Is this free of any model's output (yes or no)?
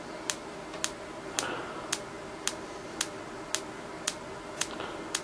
yes